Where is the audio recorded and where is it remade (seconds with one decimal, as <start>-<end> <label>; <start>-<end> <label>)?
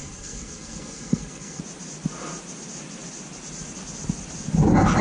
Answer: 0.0-1.6 remade; 1.6-5.0 recorded